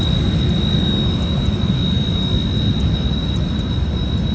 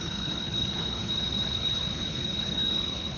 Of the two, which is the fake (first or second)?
second